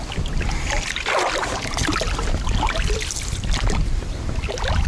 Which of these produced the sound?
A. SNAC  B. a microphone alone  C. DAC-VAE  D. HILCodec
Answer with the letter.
B